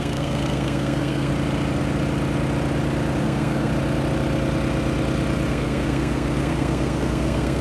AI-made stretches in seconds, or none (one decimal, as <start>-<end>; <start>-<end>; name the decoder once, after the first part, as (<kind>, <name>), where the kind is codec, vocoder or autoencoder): 0.0-1.3 (codec, SNAC); 3.2-3.7; 5.5-7.6